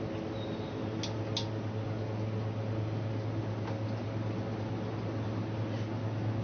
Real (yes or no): yes